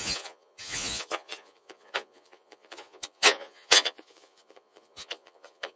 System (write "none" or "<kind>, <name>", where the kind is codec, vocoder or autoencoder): vocoder, Vocos